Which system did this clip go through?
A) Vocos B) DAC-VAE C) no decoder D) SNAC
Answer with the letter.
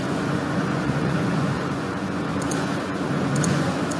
A